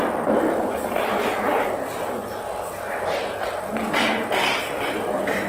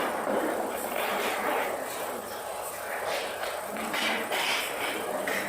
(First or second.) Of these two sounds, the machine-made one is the second